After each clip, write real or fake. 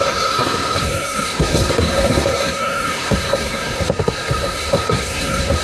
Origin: fake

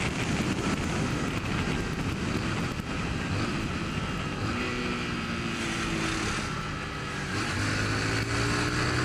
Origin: real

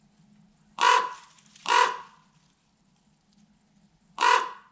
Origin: real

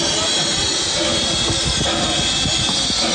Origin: real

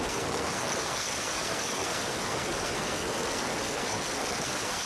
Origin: fake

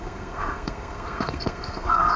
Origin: fake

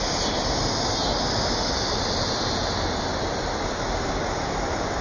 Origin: real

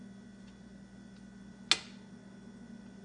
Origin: real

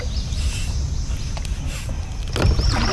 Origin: real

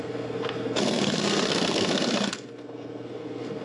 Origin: fake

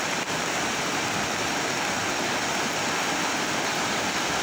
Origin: real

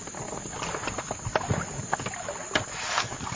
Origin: real